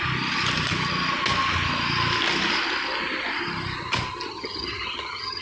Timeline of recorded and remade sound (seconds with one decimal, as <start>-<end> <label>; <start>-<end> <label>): 0.0-4.3 recorded; 4.3-5.4 remade